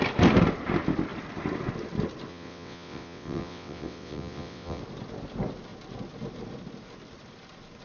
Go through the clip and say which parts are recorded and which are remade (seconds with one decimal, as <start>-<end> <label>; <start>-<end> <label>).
0.0-2.3 recorded; 2.3-4.8 remade; 4.8-7.8 recorded